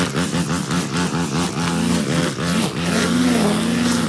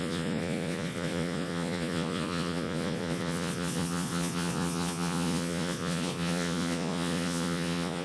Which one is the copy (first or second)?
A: second